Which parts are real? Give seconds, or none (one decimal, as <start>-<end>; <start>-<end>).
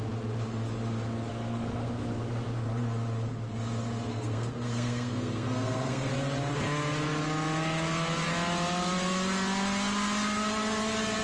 0.0-1.3; 2.0-4.1; 6.1-11.2